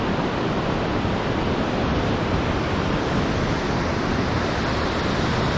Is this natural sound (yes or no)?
yes